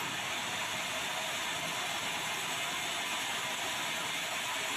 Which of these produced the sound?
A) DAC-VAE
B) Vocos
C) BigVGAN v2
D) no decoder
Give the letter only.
D